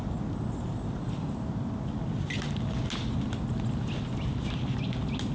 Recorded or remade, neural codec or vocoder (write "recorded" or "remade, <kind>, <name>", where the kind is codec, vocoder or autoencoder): recorded